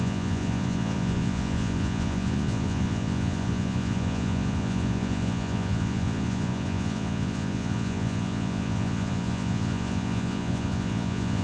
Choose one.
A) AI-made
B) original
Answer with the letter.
A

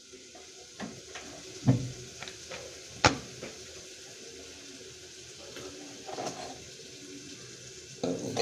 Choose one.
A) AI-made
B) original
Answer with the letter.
B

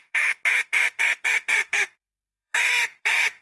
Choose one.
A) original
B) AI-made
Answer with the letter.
B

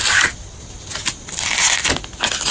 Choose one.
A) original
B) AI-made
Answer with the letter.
A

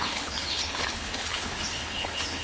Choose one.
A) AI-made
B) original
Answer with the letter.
A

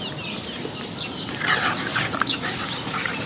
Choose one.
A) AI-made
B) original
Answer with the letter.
B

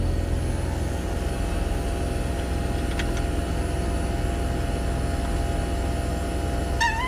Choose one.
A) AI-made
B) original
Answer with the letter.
B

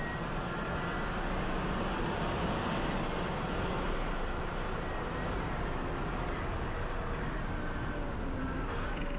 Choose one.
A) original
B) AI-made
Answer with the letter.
A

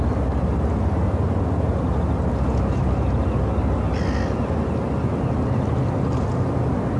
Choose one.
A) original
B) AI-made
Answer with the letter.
A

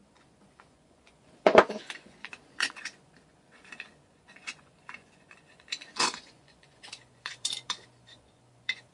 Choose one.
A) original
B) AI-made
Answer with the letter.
B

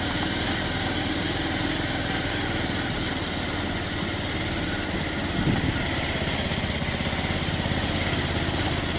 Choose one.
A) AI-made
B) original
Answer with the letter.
B